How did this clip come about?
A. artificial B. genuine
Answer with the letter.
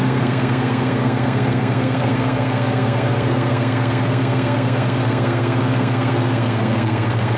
A